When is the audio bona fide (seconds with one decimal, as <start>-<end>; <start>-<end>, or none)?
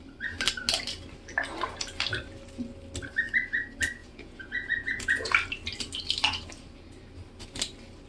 0.0-4.0; 5.3-8.1